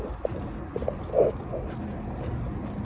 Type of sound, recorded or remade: recorded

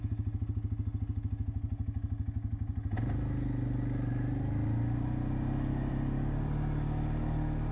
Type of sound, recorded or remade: recorded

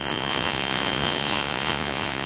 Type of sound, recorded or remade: remade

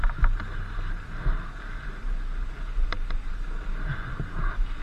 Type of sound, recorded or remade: recorded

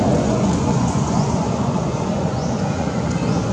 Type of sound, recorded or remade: remade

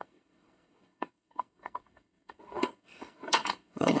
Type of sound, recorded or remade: remade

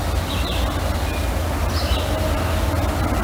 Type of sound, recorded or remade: recorded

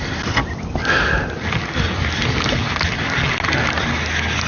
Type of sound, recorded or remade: recorded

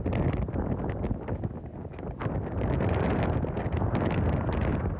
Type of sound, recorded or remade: recorded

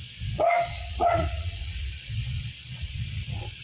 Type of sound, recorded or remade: remade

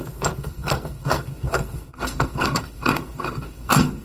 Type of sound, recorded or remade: remade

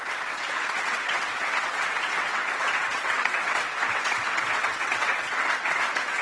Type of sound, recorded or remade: remade